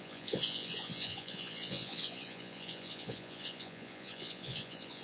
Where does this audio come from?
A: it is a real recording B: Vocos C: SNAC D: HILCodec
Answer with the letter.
B